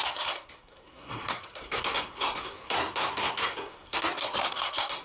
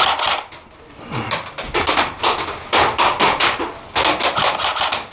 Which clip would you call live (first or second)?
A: second